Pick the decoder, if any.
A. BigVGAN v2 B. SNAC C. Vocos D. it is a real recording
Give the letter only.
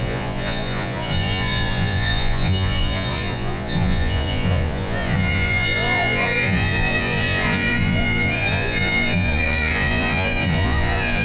C